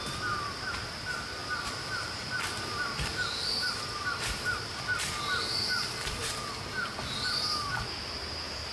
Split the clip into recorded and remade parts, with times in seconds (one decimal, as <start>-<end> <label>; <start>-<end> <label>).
0.0-1.4 recorded; 1.4-6.5 remade; 6.5-8.7 recorded